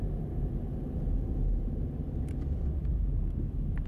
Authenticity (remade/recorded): recorded